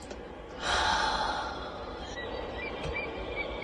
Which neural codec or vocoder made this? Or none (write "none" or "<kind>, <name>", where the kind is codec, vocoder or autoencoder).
vocoder, BigVGAN v2